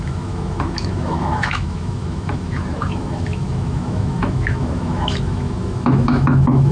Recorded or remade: remade